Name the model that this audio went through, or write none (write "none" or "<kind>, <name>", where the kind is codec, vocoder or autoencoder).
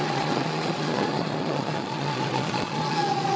vocoder, Vocos